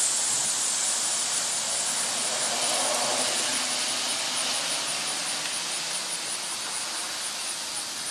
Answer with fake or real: real